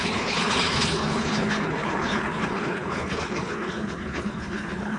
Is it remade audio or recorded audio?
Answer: remade